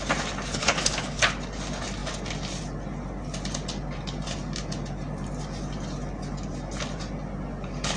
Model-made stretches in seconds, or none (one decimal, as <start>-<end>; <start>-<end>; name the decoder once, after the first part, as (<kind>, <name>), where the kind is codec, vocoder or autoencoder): 0.6-1.2 (codec, HILCodec)